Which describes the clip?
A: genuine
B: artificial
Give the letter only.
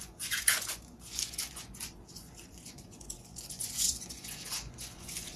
B